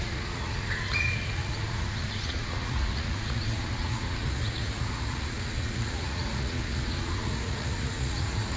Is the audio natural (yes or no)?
no